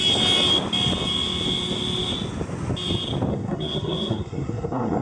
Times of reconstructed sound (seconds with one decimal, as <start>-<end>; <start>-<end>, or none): 3.3-5.0